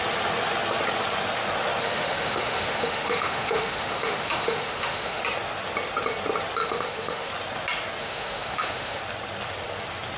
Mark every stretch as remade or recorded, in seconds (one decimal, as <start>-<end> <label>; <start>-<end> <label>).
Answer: 0.0-1.8 recorded; 1.8-5.2 remade; 5.2-6.6 recorded; 6.6-7.3 remade; 7.3-8.0 recorded; 8.0-9.0 remade; 9.0-10.2 recorded